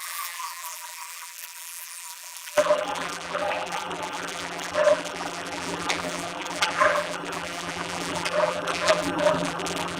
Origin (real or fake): fake